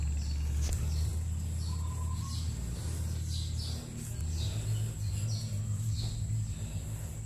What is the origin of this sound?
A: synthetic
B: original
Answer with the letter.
B